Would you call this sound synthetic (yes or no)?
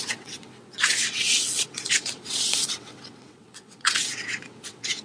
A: yes